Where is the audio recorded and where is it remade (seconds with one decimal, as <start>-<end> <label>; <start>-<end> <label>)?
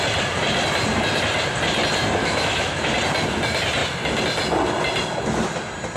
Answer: 0.0-2.2 recorded; 2.2-2.9 remade; 2.9-6.0 recorded